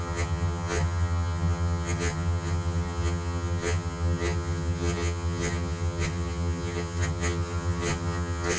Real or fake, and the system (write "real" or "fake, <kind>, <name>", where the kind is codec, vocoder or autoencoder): fake, vocoder, HiFi-GAN